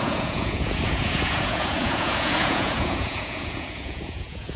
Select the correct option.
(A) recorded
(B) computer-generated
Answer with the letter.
B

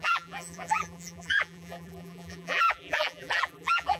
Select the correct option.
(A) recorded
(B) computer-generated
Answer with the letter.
B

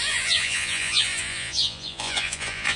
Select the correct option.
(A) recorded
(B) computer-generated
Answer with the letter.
B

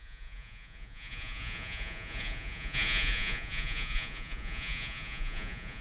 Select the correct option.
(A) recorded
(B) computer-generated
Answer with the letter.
B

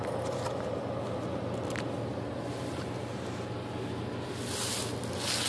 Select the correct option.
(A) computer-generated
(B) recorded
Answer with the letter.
B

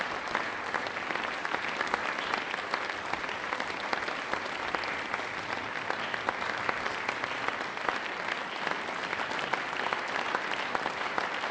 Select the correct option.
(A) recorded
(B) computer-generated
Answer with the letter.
A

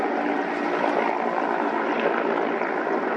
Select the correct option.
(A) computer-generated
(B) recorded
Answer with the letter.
B